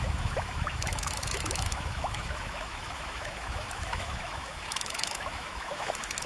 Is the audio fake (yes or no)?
yes